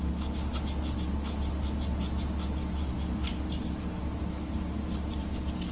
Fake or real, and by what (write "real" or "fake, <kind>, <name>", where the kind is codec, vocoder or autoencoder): real